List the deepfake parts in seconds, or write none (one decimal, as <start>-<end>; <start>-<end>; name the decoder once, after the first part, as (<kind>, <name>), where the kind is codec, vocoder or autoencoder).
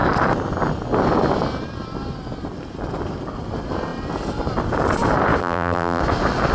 5.4-6.0 (vocoder, BigVGAN v2)